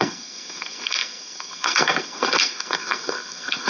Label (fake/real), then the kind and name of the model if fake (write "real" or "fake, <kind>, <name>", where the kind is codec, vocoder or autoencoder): fake, codec, SNAC